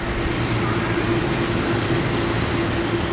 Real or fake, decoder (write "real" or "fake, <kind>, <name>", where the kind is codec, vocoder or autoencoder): real